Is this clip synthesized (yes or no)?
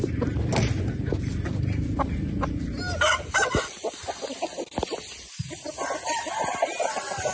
no